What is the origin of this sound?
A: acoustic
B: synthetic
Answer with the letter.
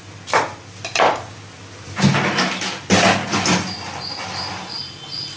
A